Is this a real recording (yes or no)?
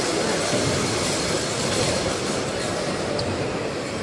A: no